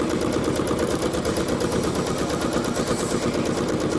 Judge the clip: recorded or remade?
recorded